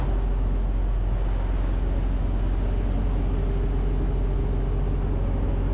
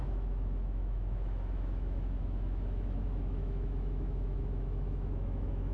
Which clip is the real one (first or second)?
first